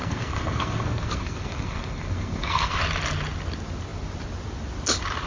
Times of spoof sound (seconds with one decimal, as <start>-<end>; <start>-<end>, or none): 0.0-2.8